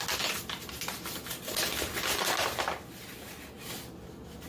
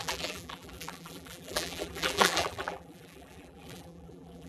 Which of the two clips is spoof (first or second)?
second